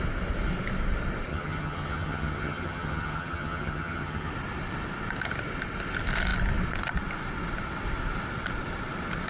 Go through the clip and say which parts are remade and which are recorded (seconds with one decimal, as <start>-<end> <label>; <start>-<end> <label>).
0.0-1.3 recorded; 1.3-4.3 remade; 4.3-9.3 recorded